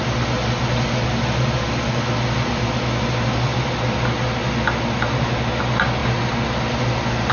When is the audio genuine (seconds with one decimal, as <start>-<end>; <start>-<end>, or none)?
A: 0.0-7.3